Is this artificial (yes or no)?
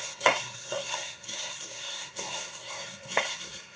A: yes